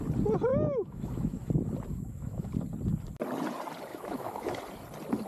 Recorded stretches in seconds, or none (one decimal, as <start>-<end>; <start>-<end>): 0.0-0.5; 1.5-1.9; 2.5-3.9; 4.6-5.3